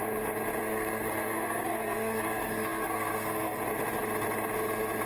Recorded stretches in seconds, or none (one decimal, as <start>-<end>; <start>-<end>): 0.0-0.6; 3.6-5.1

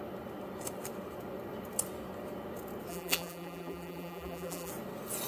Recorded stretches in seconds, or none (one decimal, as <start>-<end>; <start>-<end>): 0.0-2.9; 4.7-5.3

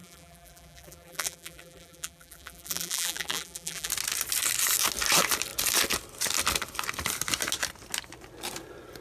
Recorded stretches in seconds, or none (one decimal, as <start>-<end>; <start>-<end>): 3.9-9.0

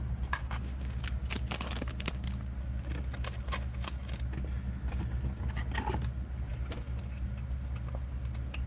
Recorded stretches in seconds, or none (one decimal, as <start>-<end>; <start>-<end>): 0.0-0.4; 1.0-8.7

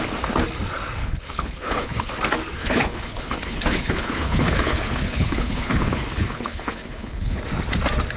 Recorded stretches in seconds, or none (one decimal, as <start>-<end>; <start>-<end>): 0.0-1.0; 2.1-2.6; 7.4-8.2

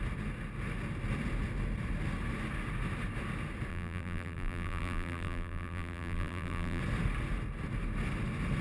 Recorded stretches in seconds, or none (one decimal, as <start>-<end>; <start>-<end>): 0.0-3.7; 6.8-8.6